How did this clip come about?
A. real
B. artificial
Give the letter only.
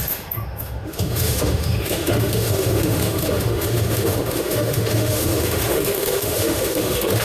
B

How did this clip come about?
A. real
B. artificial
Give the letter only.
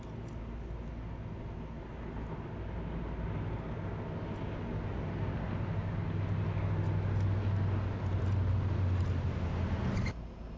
A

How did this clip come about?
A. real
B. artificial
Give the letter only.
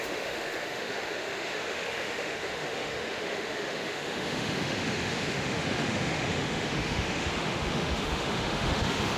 B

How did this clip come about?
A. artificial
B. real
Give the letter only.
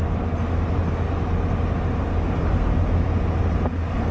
B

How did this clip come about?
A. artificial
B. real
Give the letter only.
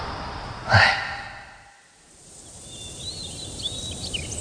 B